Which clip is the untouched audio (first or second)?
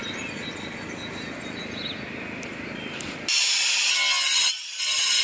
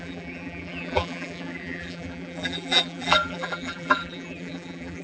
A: first